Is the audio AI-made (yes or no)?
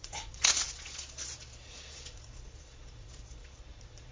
yes